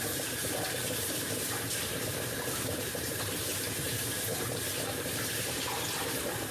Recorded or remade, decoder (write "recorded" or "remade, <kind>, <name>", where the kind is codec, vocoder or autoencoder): remade, vocoder, BigVGAN v2